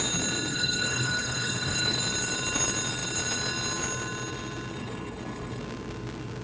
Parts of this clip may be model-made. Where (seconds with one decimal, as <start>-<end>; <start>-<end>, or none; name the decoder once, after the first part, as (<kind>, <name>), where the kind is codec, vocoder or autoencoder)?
0.5-2.0 (codec, HILCodec); 4.7-5.6